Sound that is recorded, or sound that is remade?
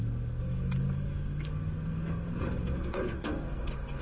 remade